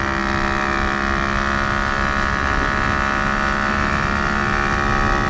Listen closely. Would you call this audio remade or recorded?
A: recorded